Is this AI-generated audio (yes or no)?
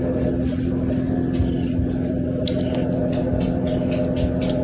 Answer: no